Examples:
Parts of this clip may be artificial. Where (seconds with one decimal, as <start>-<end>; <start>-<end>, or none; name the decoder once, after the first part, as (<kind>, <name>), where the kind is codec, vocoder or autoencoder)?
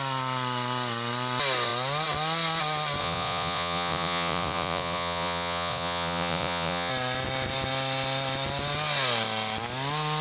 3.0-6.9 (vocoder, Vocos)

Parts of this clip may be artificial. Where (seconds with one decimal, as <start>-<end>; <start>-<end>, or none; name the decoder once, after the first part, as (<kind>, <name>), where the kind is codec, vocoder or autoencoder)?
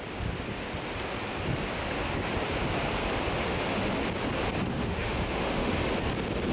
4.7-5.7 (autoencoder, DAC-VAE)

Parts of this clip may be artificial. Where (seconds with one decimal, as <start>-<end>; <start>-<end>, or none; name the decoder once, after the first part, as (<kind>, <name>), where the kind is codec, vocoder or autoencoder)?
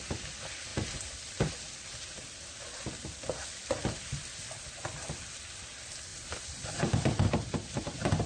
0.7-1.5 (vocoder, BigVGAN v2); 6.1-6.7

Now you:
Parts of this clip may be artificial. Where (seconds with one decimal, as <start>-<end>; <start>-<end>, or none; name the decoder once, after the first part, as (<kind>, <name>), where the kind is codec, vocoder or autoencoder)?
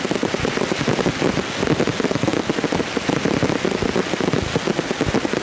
none